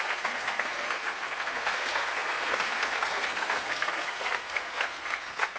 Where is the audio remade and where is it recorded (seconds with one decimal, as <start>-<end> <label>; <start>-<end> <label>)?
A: 0.0-5.6 remade